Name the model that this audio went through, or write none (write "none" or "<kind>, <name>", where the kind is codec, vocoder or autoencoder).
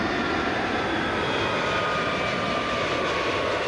none